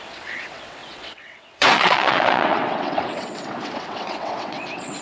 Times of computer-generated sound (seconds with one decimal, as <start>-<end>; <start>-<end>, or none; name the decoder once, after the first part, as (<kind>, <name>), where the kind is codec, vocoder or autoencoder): 0.0-5.0 (vocoder, WaveNeXt)